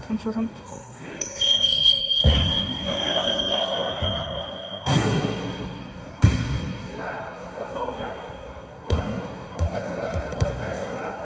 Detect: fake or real fake